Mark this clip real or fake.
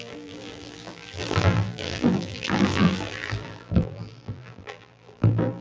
fake